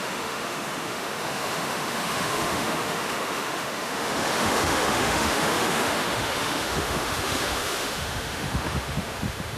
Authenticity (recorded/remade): remade